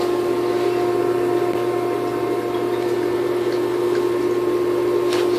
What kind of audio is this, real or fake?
real